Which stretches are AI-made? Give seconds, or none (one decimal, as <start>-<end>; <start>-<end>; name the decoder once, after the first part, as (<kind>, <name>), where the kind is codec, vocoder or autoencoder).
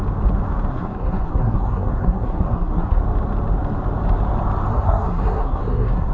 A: 0.7-3.0 (codec, SNAC); 4.7-6.1